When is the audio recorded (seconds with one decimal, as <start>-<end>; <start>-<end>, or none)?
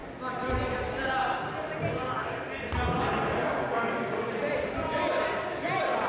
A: 0.0-3.4; 4.3-6.1